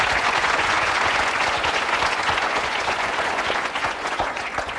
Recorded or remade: remade